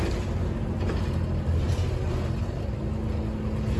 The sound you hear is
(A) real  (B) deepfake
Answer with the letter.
A